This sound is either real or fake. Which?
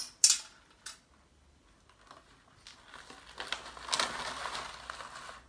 real